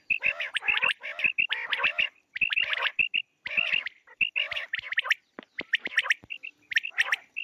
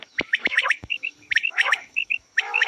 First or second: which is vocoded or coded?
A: second